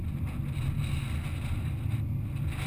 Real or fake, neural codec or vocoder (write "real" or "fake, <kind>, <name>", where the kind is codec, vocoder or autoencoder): real